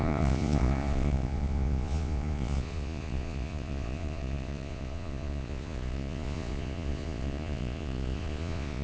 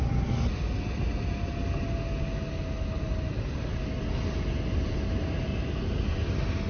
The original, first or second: second